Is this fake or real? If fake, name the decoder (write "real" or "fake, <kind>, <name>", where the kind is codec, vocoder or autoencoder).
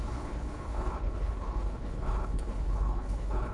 fake, codec, HILCodec